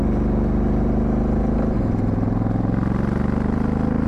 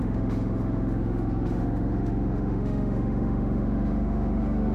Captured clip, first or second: first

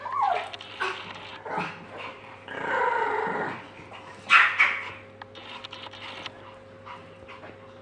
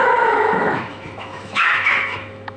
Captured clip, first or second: first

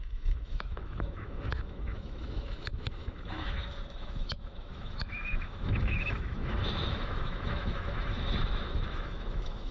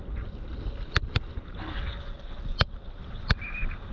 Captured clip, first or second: second